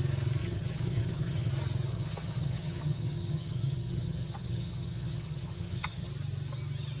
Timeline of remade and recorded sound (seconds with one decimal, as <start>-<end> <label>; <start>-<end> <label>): 0.0-0.4 recorded; 0.4-1.5 remade; 1.5-1.9 recorded; 1.9-6.1 remade; 6.1-7.0 recorded